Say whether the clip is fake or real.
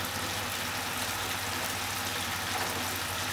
real